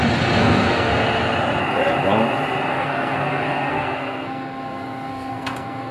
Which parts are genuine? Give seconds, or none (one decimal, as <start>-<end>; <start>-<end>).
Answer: 0.0-0.4; 0.9-2.7